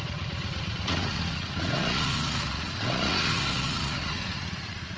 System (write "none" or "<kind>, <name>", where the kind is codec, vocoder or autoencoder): vocoder, Vocos